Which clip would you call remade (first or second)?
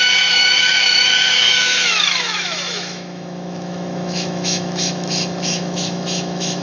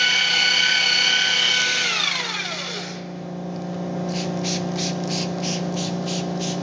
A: first